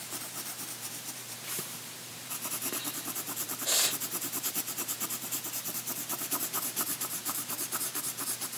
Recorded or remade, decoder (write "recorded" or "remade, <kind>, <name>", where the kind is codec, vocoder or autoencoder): remade, vocoder, BigVGAN v2